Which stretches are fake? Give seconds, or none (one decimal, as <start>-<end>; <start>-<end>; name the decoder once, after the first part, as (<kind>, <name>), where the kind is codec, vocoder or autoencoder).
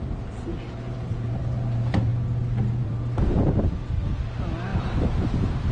0.0-2.1 (vocoder, BigVGAN v2); 2.7-5.7